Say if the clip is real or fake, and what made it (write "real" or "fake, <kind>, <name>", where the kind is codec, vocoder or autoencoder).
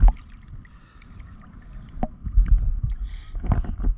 real